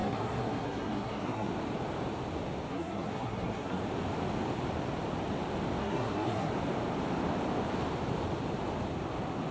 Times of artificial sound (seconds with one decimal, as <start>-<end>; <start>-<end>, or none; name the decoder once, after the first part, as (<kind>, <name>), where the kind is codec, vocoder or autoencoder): 0.0-1.5 (codec, SNAC); 2.7-3.8; 5.8-6.5